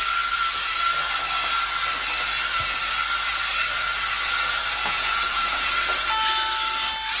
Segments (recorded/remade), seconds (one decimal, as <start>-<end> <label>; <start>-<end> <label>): 0.0-4.8 recorded; 4.8-5.7 remade; 5.7-7.2 recorded